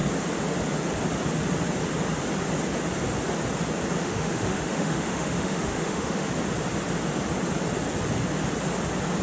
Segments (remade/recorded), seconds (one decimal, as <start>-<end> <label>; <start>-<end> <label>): 0.0-4.0 recorded; 4.0-6.3 remade; 6.3-9.2 recorded